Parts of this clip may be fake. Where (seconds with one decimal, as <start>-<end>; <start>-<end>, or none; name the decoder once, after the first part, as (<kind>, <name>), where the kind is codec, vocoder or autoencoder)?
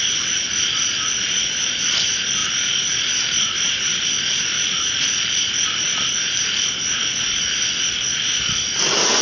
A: none